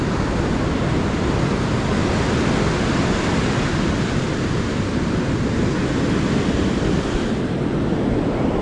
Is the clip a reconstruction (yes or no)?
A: no